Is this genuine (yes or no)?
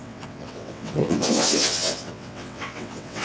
no